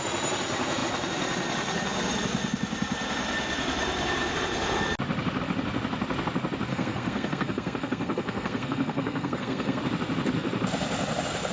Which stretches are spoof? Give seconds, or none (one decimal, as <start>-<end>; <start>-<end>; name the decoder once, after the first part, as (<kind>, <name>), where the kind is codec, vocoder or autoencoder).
6.7-9.8 (codec, SNAC)